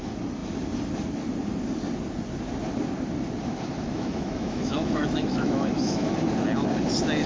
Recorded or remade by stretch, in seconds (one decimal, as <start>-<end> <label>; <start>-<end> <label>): 0.0-3.9 recorded; 3.9-6.1 remade; 6.1-7.3 recorded